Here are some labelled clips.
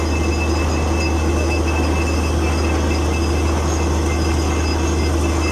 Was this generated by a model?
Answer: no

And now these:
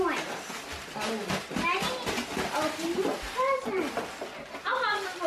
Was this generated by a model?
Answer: no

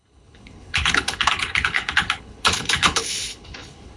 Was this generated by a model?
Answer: yes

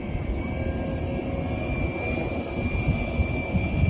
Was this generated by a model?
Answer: no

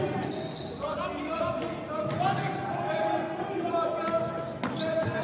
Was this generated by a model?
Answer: no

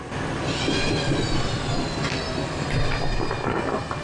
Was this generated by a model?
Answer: no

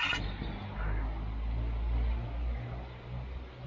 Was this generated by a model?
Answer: no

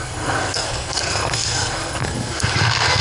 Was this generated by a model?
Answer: yes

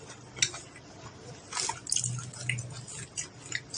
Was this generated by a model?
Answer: no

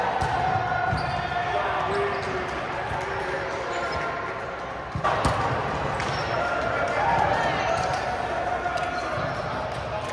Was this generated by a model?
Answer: no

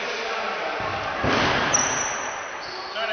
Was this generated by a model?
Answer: no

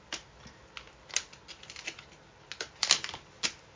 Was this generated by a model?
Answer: no